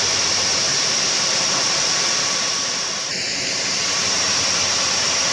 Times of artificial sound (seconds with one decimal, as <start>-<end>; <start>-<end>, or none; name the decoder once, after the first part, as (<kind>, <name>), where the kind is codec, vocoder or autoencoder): 3.1-4.3 (vocoder, BigVGAN v2)